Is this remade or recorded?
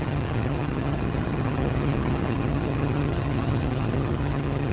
remade